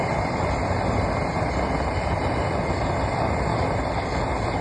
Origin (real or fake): real